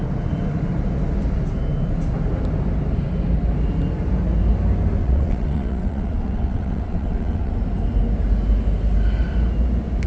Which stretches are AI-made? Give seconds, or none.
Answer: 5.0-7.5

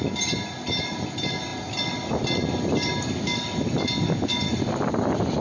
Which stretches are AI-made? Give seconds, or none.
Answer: none